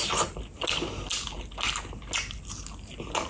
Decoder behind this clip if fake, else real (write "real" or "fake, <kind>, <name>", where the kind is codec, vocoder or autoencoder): real